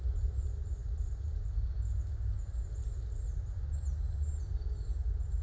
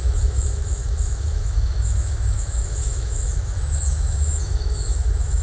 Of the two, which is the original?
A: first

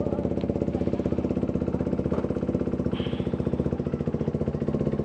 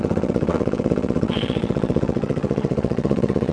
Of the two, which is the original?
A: first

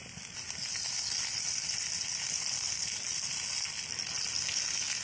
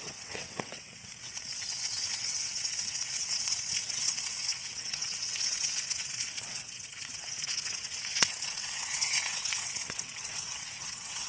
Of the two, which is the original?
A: first